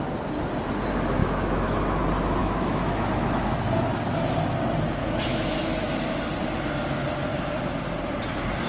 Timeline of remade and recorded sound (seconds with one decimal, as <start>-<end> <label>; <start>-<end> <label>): 0.0-1.2 recorded; 1.2-2.0 remade; 2.0-2.4 recorded; 2.4-3.9 remade; 3.9-5.0 recorded; 5.0-6.2 remade; 6.2-8.7 recorded